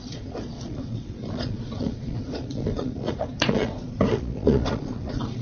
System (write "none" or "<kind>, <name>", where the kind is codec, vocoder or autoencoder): vocoder, Vocos